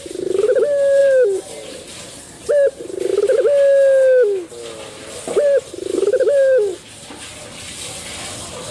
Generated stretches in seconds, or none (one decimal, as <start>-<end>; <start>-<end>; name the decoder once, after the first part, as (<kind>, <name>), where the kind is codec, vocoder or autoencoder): 0.0-3.1 (vocoder, BigVGAN v2)

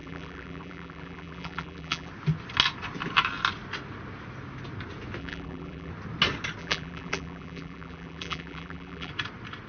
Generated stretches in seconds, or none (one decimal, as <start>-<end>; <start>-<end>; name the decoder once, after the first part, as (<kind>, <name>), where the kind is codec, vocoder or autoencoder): 0.0-2.1 (vocoder, BigVGAN v2); 5.2-5.9; 6.6-9.1

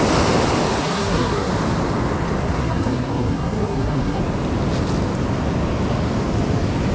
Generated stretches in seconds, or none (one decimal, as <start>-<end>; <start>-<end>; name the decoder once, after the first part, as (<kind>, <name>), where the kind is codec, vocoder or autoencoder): 0.8-1.5 (codec, SNAC); 2.4-4.2